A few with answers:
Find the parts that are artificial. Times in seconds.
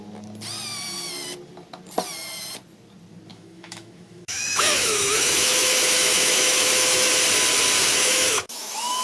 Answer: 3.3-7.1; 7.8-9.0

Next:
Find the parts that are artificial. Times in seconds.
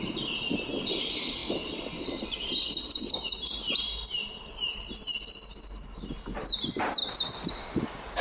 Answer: none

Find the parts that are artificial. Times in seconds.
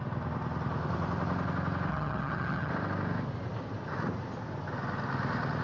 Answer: 1.9-2.7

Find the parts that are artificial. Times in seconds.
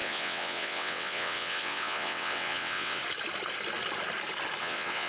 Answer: 0.0-3.0; 4.6-5.1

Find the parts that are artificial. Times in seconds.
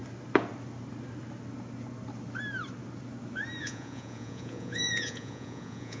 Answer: 3.6-6.0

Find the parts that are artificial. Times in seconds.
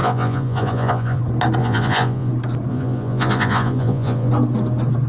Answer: 0.0-1.2; 1.6-2.3; 2.7-4.3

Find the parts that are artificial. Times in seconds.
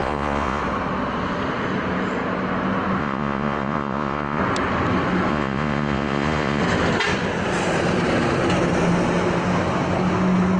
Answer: 0.0-0.6; 3.0-4.4; 5.3-6.6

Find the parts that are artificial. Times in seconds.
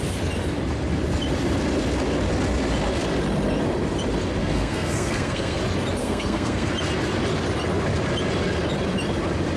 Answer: 4.4-5.6; 6.0-6.7